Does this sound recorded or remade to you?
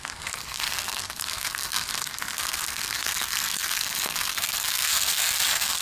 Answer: remade